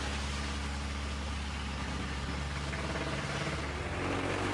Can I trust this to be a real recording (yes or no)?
yes